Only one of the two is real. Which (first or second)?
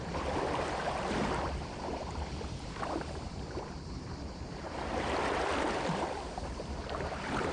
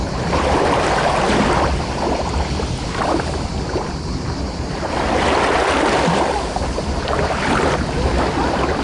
second